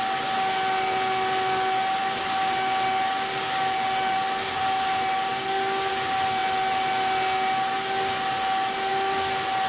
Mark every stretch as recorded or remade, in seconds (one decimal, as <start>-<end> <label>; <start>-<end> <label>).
0.0-9.7 recorded